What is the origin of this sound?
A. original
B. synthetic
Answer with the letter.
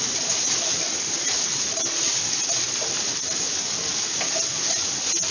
A